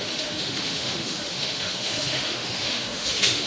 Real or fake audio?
fake